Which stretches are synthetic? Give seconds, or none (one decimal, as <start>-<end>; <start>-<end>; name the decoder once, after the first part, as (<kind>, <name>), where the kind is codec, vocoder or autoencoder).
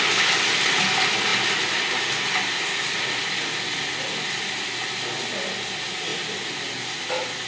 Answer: none